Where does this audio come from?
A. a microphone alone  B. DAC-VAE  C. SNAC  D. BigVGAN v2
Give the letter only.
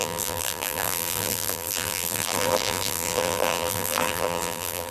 D